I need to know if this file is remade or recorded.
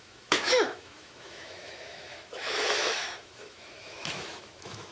remade